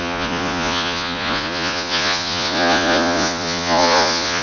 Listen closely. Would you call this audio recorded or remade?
remade